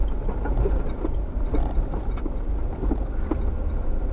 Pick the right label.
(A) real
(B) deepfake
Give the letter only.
A